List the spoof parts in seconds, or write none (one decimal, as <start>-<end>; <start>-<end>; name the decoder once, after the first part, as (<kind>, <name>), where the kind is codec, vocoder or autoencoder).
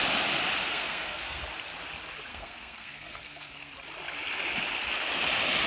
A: 0.7-1.4 (codec, SNAC); 2.3-3.7